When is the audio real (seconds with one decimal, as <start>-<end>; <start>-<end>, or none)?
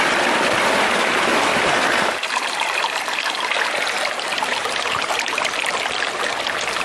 0.0-4.3; 5.3-6.8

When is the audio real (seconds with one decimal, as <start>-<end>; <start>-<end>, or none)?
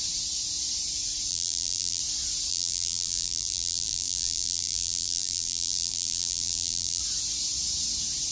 0.0-1.3; 2.0-2.5; 7.0-8.3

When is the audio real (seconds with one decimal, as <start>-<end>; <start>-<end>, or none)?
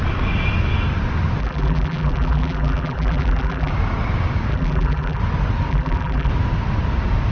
0.0-1.4; 3.7-4.5; 5.2-5.7; 6.3-7.3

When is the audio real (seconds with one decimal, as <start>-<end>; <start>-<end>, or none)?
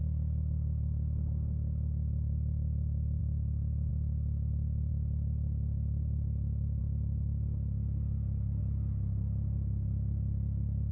0.0-3.2; 3.9-10.9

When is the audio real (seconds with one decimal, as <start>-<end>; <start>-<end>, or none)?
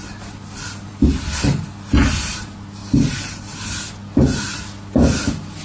0.0-5.6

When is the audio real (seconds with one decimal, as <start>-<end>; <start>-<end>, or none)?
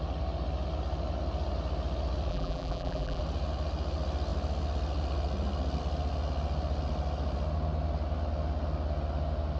0.0-2.3; 3.2-9.6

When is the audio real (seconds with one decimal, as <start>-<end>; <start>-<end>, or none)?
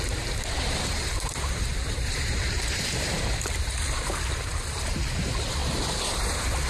5.6-6.1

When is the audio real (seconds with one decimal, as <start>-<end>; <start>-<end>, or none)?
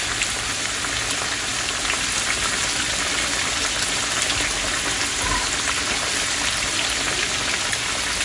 0.0-1.5; 2.8-8.2